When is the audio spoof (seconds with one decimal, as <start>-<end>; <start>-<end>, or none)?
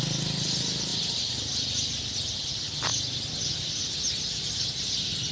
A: none